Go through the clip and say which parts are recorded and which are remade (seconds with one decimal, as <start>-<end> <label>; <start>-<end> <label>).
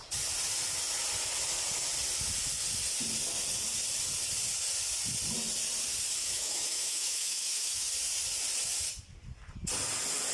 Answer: 0.0-6.2 recorded; 6.2-7.9 remade; 7.9-10.3 recorded